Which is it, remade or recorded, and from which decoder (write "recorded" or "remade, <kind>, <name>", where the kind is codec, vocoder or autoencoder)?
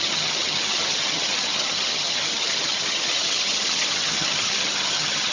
remade, vocoder, HiFi-GAN